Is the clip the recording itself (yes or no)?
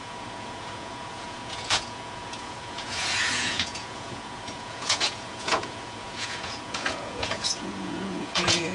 no